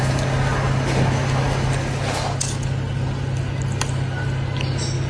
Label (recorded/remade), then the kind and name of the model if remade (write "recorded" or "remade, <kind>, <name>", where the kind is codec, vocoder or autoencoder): recorded